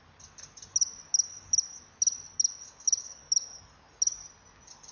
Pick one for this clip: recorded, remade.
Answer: recorded